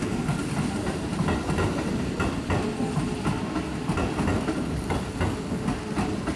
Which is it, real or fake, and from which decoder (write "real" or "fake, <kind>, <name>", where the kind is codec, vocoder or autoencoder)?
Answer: real